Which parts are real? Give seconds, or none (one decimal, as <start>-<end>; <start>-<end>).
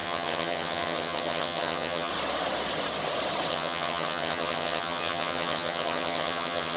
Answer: 2.1-3.5